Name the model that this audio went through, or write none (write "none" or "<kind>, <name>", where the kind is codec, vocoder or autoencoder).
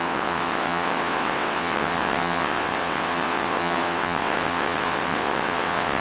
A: vocoder, WaveNeXt